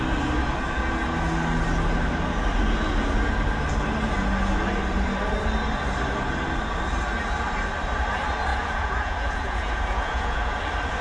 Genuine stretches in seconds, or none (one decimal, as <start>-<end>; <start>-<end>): 0.0-8.5; 10.6-11.0